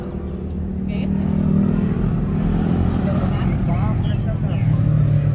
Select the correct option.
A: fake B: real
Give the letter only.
B